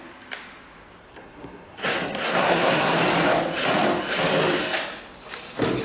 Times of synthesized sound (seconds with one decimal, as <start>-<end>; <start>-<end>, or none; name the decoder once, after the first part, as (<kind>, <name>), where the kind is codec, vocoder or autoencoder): 1.0-3.0 (codec, SNAC)